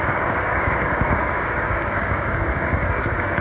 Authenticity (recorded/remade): remade